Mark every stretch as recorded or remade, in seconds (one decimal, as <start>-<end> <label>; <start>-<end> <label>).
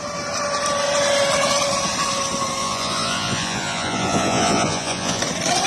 0.0-2.6 recorded; 2.6-5.2 remade; 5.2-5.7 recorded